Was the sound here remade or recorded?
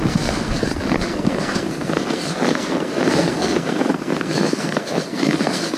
remade